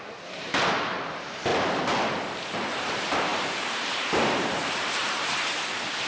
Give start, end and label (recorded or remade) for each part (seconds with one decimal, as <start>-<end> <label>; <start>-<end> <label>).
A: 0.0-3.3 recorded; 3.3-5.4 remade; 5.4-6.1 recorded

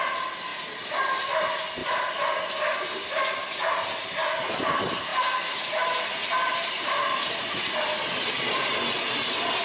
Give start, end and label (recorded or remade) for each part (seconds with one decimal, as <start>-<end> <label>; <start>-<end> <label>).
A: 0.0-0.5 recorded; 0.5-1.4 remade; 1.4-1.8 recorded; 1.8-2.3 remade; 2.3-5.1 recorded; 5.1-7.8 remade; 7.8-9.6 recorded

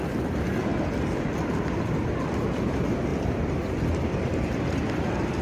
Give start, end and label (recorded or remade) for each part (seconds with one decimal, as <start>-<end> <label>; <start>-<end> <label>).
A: 0.0-5.4 recorded

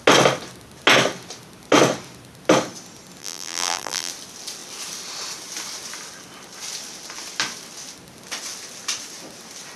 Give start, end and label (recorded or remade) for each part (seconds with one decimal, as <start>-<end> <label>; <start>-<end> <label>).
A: 0.0-3.2 recorded; 3.2-4.1 remade; 4.1-9.8 recorded

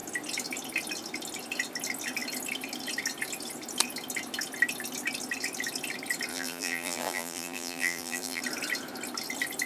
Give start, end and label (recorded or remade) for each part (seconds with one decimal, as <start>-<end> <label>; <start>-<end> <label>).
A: 0.0-6.3 recorded; 6.3-8.4 remade; 8.4-9.7 recorded

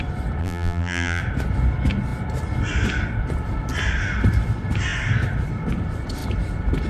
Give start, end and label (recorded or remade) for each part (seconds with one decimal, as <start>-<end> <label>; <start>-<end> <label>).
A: 0.0-0.4 recorded; 0.4-1.2 remade; 1.2-6.9 recorded